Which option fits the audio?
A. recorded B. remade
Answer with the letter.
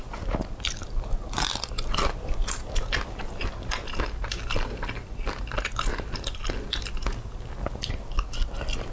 A